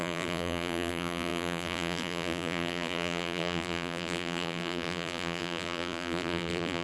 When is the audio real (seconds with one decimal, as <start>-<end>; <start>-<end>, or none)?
none